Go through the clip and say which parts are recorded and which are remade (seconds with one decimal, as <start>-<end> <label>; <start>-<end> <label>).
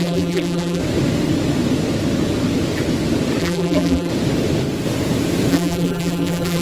0.0-0.8 remade; 0.8-3.4 recorded; 3.4-4.1 remade; 4.1-5.5 recorded; 5.5-6.6 remade